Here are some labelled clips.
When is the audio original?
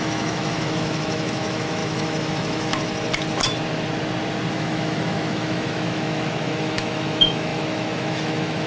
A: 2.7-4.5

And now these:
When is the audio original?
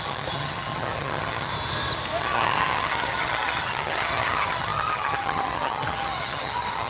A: 1.5-2.2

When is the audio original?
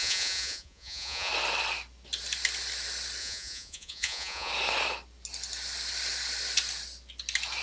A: 1.3-3.2; 4.5-7.6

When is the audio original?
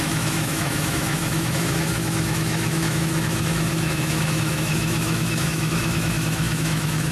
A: none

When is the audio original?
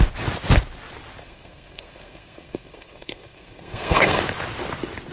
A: 0.0-1.2; 4.2-5.1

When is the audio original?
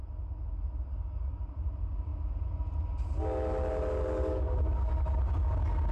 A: 0.0-0.9; 1.4-4.2; 5.2-5.9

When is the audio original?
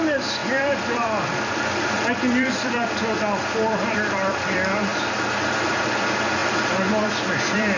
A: 4.9-5.5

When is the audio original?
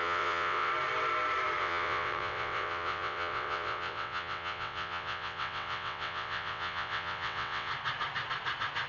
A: 0.7-1.6; 7.7-8.9